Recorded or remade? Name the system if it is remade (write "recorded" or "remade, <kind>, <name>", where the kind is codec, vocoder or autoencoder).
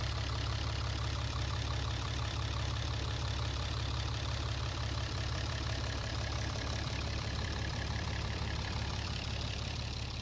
remade, vocoder, BigVGAN v2